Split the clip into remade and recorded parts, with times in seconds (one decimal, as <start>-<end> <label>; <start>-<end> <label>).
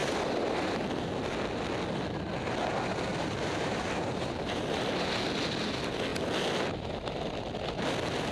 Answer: 0.0-3.1 recorded; 3.1-4.8 remade; 4.8-8.3 recorded